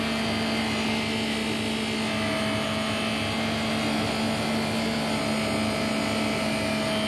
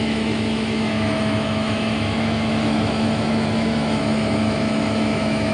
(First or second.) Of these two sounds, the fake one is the second